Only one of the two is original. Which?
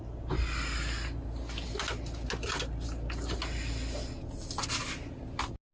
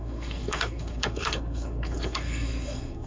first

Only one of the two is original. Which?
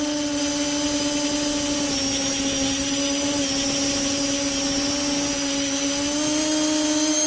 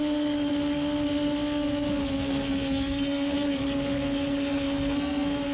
first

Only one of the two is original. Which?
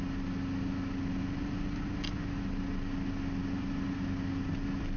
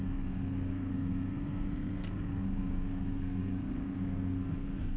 first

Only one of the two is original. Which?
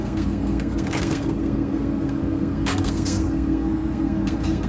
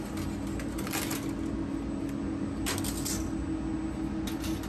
second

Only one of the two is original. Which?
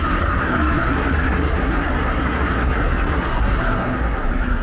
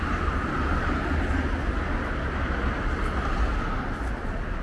second